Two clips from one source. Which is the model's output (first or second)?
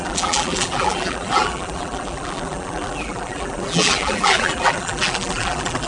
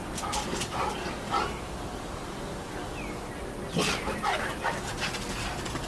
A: first